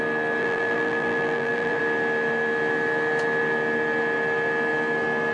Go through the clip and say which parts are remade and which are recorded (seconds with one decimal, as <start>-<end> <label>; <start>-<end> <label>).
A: 0.0-0.4 recorded; 0.4-1.8 remade; 1.8-5.3 recorded